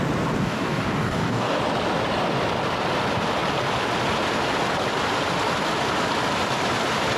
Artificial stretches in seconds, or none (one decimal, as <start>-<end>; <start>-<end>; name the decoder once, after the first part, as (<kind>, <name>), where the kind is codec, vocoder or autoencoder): 0.4-1.6 (codec, DAC)